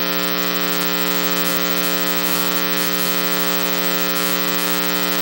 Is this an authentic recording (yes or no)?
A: yes